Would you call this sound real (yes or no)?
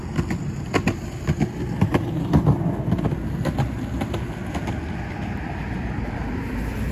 yes